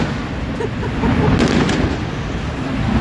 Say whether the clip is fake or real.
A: real